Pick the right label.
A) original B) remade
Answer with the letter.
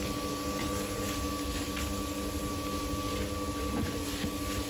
A